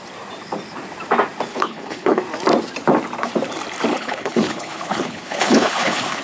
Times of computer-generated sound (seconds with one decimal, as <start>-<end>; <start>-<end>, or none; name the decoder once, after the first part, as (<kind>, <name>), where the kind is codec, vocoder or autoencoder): 1.5-2.2 (codec, HILCodec); 3.9-6.2